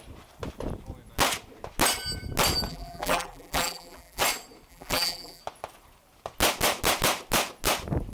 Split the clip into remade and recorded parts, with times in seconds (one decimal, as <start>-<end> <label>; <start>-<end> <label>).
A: 0.0-2.7 recorded; 2.7-4.2 remade; 4.2-4.7 recorded; 4.7-5.4 remade; 5.4-8.1 recorded